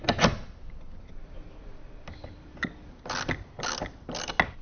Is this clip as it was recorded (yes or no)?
yes